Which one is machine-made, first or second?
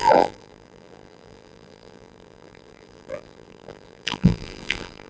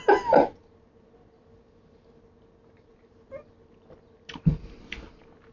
first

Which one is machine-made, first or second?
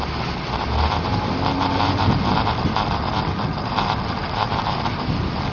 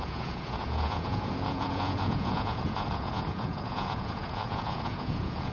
second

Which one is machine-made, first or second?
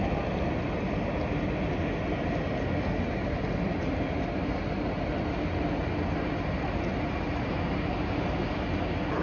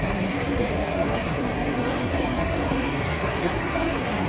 second